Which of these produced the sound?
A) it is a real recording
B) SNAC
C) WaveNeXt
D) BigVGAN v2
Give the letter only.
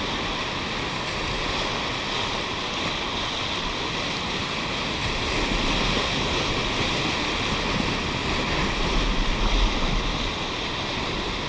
A